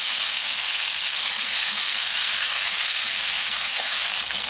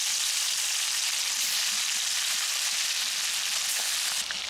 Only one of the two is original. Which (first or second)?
second